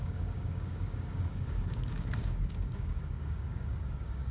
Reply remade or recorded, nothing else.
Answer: remade